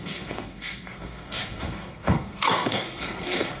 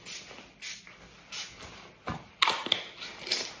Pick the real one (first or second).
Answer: second